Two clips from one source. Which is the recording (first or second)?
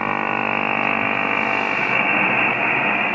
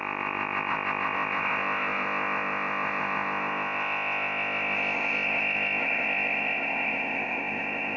first